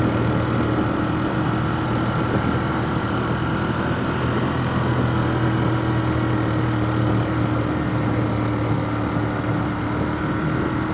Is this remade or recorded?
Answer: recorded